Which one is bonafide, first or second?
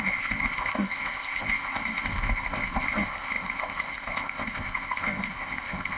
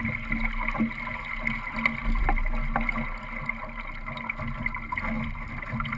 second